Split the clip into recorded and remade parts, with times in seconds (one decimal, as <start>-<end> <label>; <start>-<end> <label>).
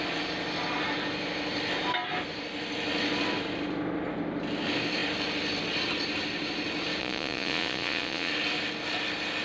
0.0-7.0 recorded; 7.0-8.3 remade; 8.3-9.4 recorded